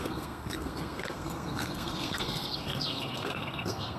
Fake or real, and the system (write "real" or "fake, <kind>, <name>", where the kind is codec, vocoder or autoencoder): fake, codec, SNAC